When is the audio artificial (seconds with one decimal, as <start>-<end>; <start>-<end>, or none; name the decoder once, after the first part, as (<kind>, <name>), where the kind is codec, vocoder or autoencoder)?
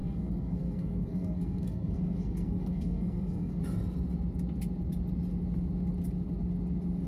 0.0-3.6 (codec, SNAC)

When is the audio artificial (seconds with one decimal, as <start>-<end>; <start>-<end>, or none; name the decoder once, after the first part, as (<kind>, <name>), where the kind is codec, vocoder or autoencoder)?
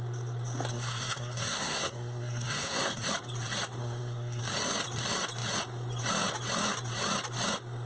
0.7-3.1 (codec, SNAC); 3.8-4.4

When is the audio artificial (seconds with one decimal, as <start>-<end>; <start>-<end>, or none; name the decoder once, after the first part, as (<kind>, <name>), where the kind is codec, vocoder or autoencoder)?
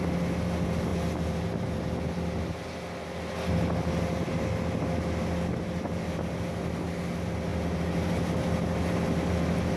none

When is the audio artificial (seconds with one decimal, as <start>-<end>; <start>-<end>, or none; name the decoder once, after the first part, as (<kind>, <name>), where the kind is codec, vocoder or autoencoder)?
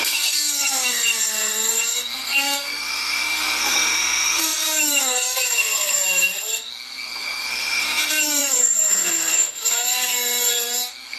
0.0-11.2 (codec, SNAC)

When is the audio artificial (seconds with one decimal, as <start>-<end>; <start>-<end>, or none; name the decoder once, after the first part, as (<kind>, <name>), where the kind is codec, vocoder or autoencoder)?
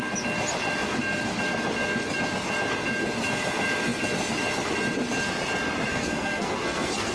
5.9-7.1 (codec, SNAC)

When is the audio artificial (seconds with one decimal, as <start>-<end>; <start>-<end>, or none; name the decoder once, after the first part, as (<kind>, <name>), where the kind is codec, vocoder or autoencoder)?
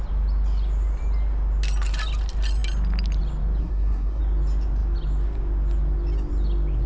3.6-4.2 (codec, SNAC)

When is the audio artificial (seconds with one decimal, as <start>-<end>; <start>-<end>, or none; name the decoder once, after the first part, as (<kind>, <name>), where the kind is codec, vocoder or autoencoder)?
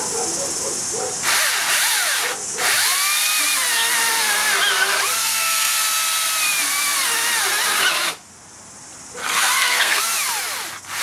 5.2-5.8 (codec, SNAC); 9.2-10.0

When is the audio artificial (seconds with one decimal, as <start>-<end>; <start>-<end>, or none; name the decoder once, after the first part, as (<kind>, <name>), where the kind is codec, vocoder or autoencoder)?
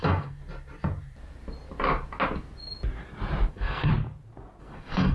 0.0-0.4 (codec, SNAC); 3.5-3.9; 4.6-5.1